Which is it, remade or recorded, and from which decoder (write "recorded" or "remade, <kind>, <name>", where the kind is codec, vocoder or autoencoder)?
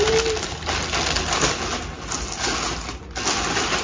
recorded